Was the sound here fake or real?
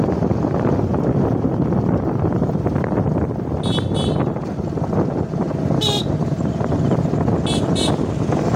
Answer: real